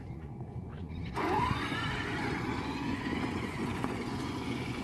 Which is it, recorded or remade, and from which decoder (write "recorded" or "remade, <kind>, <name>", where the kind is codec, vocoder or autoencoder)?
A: remade, vocoder, Vocos